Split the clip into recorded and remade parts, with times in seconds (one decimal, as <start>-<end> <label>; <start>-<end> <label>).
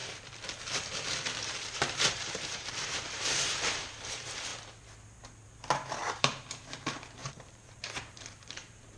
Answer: 0.0-1.4 recorded; 1.4-4.5 remade; 4.5-6.2 recorded; 6.2-9.0 remade